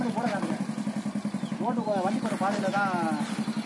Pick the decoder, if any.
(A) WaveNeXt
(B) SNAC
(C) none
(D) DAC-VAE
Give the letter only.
C